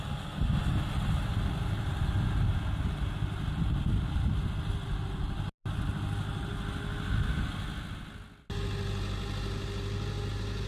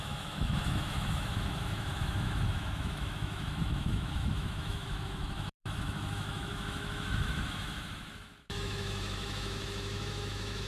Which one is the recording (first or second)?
first